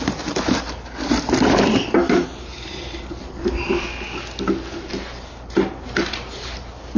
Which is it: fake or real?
real